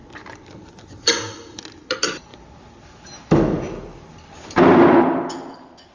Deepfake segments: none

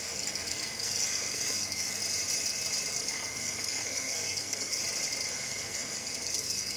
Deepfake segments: 0.0-2.0 (codec, SNAC); 2.9-4.8; 5.3-6.8

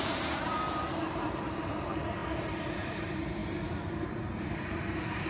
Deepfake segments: 0.0-5.3 (vocoder, BigVGAN v2)